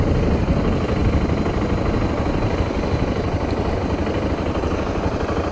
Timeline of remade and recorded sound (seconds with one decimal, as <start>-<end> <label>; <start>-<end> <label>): 0.0-5.5 recorded